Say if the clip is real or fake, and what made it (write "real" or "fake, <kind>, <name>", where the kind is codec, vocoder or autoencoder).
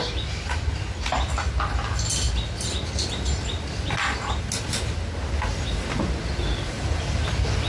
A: real